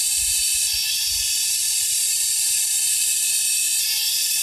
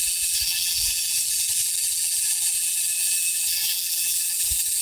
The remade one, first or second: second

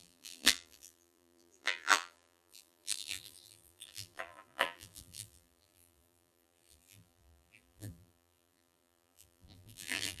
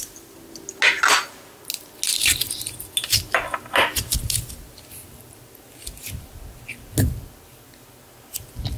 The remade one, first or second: first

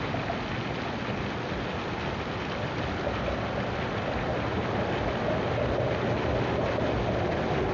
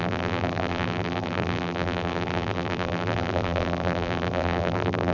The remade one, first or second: second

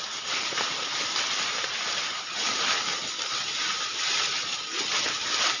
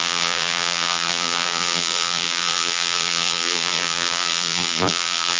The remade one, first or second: second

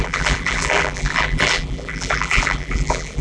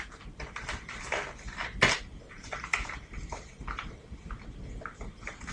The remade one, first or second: first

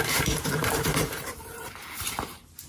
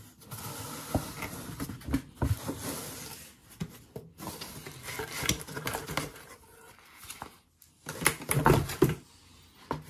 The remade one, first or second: first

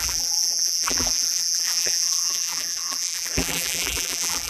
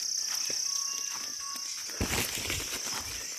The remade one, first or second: first